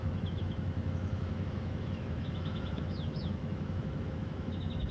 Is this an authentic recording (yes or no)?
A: no